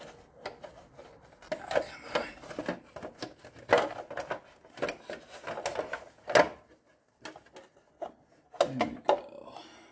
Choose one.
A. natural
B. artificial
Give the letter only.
A